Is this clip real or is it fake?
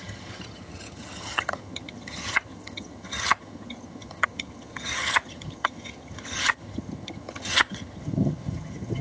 fake